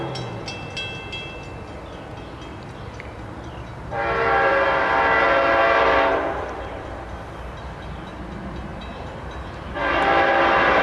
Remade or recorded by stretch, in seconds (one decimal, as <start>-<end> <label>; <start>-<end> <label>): 0.0-2.5 recorded; 2.5-3.5 remade; 3.5-10.8 recorded